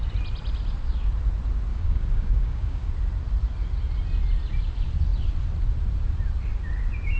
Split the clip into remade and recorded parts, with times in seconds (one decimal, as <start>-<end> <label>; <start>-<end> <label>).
0.0-1.7 recorded; 1.7-2.9 remade; 2.9-7.2 recorded